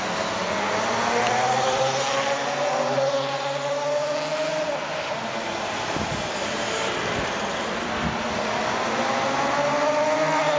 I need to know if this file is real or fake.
real